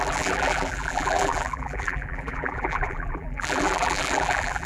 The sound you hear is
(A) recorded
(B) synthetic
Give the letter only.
B